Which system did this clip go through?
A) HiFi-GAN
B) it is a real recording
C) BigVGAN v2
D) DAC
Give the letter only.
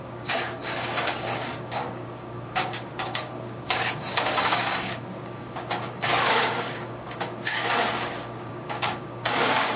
D